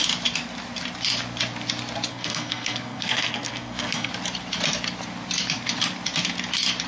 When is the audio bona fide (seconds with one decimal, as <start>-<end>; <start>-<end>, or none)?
0.0-2.1; 4.1-6.9